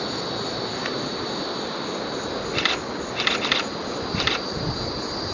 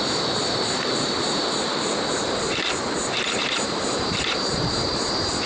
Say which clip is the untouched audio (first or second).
first